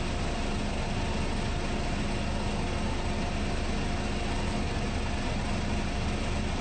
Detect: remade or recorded recorded